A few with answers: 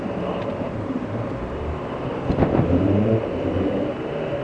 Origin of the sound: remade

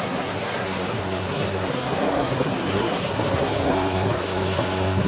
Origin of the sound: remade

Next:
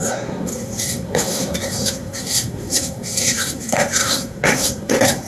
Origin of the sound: remade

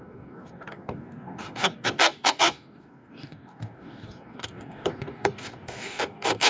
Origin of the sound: remade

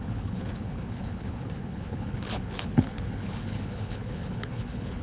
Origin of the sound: remade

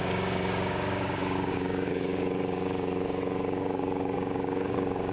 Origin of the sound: remade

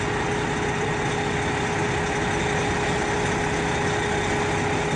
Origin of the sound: recorded